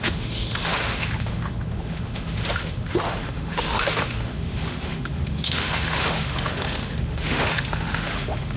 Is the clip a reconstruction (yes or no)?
yes